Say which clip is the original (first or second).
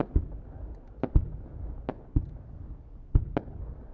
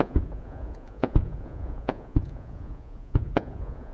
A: first